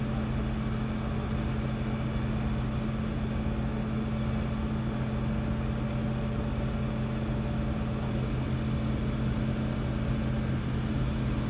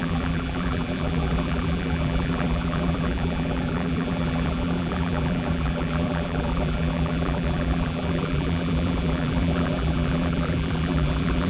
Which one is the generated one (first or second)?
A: second